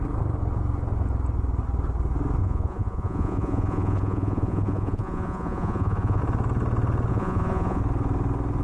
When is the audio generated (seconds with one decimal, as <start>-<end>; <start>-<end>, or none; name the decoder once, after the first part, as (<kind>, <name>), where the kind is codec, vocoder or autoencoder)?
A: 2.4-6.2 (vocoder, Vocos); 7.1-7.8

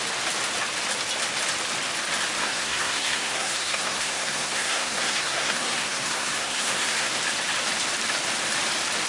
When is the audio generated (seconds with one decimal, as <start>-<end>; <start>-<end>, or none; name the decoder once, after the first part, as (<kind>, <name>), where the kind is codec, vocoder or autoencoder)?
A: 2.4-7.1 (codec, SNAC)

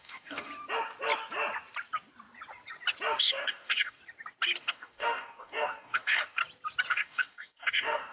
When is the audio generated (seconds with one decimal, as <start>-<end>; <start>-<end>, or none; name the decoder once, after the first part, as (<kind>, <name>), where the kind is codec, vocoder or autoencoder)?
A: 0.0-0.5 (codec, DAC); 3.2-4.0; 4.6-6.4; 6.9-8.1

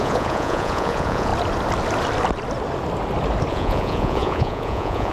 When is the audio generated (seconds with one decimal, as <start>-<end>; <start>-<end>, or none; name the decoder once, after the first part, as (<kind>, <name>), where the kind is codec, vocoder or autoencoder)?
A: 0.0-1.3 (vocoder, Vocos); 3.5-5.1

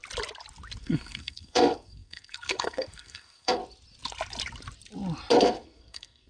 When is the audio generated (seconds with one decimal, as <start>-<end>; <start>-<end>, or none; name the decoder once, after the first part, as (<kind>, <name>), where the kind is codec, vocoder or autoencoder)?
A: 0.8-3.6 (codec, SNAC); 5.4-6.3

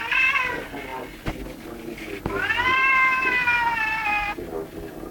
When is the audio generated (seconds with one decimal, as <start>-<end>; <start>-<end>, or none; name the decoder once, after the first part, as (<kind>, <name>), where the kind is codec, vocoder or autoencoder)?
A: none

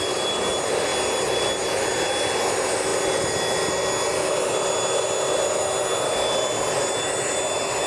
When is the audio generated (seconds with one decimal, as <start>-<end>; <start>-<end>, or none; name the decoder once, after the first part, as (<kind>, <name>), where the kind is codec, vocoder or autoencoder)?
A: none